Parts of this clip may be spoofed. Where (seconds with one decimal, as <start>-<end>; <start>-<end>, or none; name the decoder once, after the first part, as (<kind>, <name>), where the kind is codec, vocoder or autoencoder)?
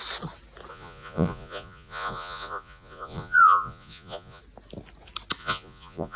0.7-4.4 (vocoder, Vocos); 5.4-6.2